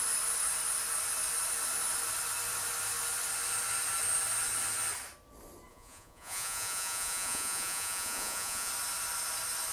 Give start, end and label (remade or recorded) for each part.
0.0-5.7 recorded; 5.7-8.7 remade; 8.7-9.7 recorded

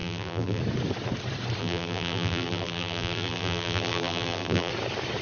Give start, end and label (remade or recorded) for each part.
0.0-0.6 remade; 0.6-1.6 recorded; 1.6-4.7 remade; 4.7-5.2 recorded

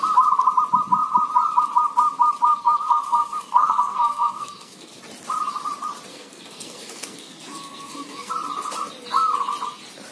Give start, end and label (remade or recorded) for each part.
0.0-2.5 recorded; 2.5-5.0 remade; 5.0-6.1 recorded; 6.1-8.3 remade; 8.3-10.1 recorded

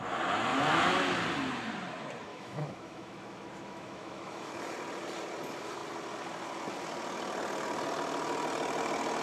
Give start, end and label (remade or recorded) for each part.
0.0-0.5 recorded; 0.5-1.2 remade; 1.2-2.3 recorded; 2.3-4.5 remade; 4.5-9.2 recorded

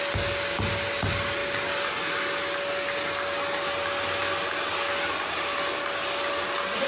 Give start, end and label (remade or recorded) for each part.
0.0-6.9 recorded

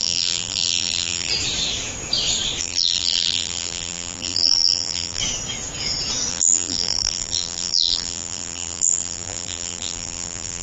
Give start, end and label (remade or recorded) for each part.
0.0-1.3 remade; 1.3-2.6 recorded; 2.6-5.2 remade; 5.2-6.3 recorded; 6.3-10.6 remade

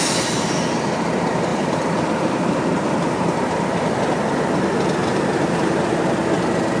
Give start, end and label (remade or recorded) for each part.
0.0-1.5 recorded; 1.5-3.4 remade; 3.4-5.0 recorded; 5.0-6.1 remade; 6.1-6.8 recorded

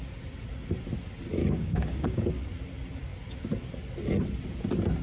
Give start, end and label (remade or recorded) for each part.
0.0-1.4 recorded; 1.4-2.3 remade; 2.3-5.0 recorded